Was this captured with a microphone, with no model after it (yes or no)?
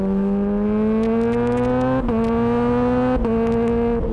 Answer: yes